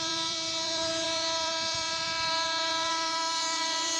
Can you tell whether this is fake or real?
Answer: fake